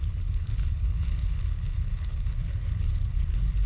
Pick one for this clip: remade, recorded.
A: remade